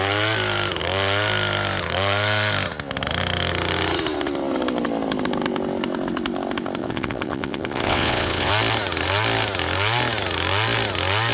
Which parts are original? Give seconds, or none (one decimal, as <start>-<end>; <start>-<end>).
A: 0.0-6.8; 8.5-11.3